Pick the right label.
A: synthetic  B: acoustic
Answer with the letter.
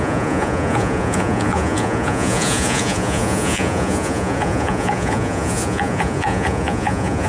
A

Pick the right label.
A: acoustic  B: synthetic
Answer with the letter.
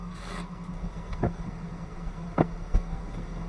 B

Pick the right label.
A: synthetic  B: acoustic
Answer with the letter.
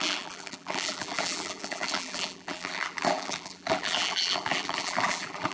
A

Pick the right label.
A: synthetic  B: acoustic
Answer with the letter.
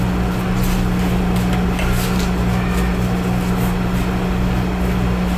B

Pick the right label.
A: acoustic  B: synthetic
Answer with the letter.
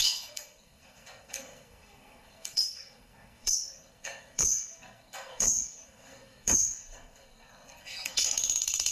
B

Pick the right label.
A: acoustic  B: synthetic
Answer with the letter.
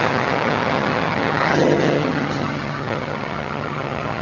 B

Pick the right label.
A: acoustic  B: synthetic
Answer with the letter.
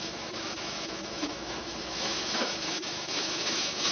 B